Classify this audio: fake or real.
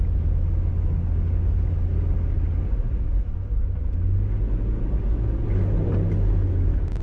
real